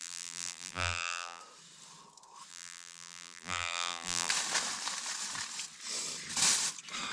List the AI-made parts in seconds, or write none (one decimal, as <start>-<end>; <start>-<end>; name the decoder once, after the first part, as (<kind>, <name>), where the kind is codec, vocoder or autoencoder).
0.0-1.4 (vocoder, BigVGAN v2); 2.5-4.3